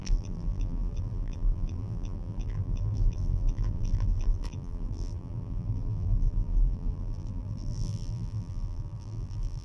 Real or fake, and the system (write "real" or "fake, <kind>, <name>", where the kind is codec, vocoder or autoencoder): fake, vocoder, BigVGAN v2